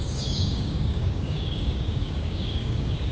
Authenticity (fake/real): fake